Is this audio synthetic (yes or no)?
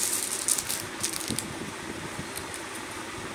no